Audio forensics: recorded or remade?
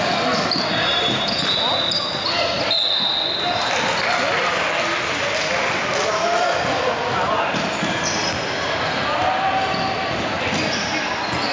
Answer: recorded